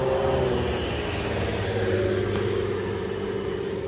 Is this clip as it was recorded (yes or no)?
yes